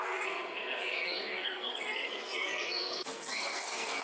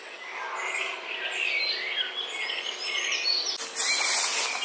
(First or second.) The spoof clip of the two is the first